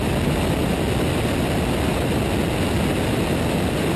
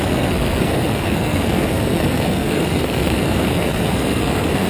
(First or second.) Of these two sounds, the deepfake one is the second